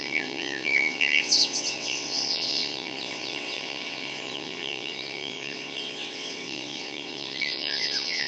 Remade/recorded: remade